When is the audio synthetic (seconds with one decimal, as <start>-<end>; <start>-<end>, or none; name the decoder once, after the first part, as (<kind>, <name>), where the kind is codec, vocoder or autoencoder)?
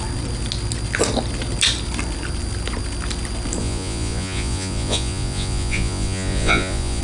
3.6-7.0 (vocoder, Vocos)